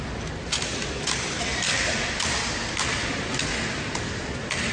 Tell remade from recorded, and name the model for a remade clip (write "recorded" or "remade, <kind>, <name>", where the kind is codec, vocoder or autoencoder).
recorded